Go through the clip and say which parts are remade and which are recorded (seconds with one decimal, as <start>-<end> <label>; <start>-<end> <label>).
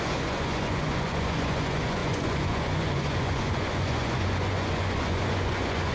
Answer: 0.0-5.9 remade